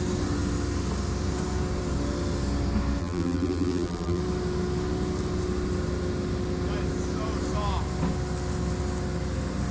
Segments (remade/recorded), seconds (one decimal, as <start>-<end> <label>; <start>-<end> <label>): 0.0-3.0 recorded; 3.0-4.2 remade; 4.2-9.7 recorded